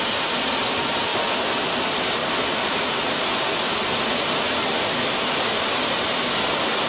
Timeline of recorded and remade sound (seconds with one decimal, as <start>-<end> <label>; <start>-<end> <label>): 0.0-6.9 recorded